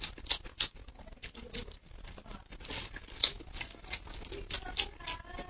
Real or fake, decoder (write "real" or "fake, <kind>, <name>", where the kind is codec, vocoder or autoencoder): real